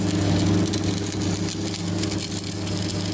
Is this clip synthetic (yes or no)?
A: no